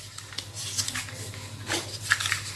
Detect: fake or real real